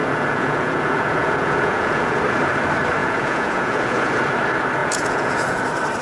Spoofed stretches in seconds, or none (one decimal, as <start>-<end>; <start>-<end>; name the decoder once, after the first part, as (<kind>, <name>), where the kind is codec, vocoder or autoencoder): 0.0-2.2 (vocoder, Vocos); 3.0-4.2; 4.8-5.6